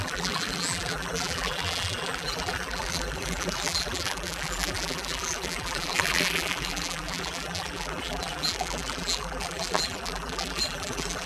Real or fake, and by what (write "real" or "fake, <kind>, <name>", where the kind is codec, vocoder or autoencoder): fake, vocoder, BigVGAN v2